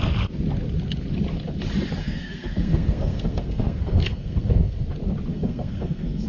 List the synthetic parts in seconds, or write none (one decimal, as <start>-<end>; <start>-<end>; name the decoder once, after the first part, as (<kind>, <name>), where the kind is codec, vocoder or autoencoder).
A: 2.0-4.8 (codec, SNAC); 5.3-6.3